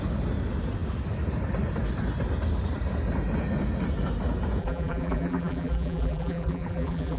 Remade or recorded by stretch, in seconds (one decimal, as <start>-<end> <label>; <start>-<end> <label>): 0.0-4.6 recorded; 4.6-7.2 remade